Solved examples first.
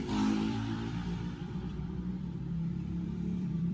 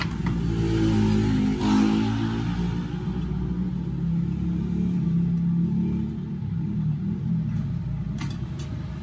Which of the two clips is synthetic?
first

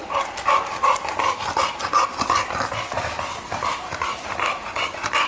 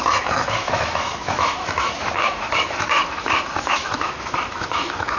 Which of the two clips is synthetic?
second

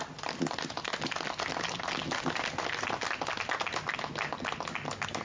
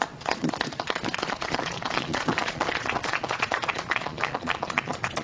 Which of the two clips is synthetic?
second